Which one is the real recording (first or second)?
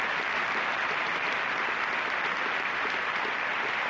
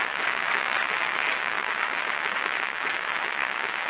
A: first